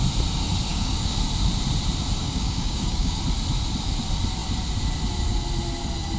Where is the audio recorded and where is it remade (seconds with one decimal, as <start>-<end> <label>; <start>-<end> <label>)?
0.0-0.7 recorded; 0.7-1.2 remade; 1.2-2.2 recorded; 2.2-3.2 remade; 3.2-6.2 recorded